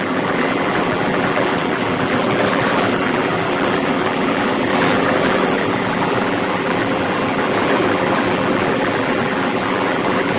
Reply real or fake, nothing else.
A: fake